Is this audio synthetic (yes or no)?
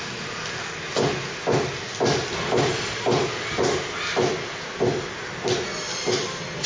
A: no